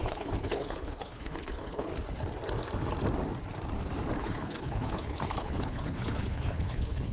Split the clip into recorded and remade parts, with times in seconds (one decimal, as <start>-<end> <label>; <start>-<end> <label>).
0.0-1.9 remade; 1.9-4.2 recorded; 4.2-7.1 remade